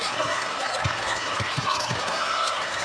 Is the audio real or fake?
fake